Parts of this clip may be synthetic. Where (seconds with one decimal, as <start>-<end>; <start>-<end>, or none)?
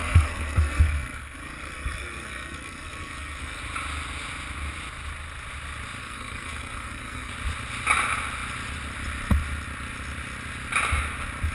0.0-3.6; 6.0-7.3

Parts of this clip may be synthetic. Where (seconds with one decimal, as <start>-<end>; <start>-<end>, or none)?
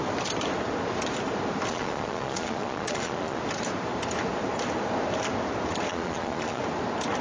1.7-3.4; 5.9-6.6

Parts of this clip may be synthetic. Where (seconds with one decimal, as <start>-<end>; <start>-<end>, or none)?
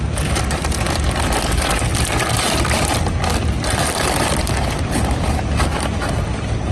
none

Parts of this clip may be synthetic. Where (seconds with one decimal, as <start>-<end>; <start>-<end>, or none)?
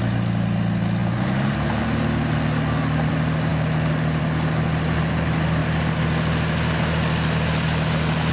none